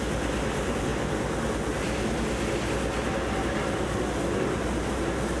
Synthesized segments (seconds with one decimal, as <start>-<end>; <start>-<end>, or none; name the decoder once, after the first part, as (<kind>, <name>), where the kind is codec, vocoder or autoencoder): none